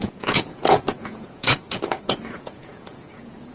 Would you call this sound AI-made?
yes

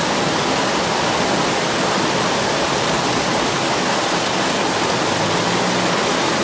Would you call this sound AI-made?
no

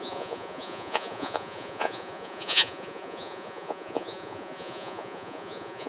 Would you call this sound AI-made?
yes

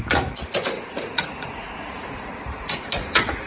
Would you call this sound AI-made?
yes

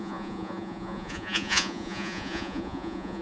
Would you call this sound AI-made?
yes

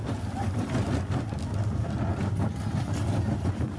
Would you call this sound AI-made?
no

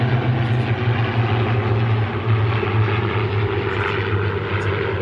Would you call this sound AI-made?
no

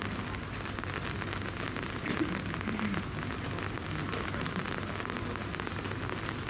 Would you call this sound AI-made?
no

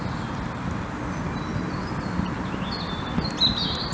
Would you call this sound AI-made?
no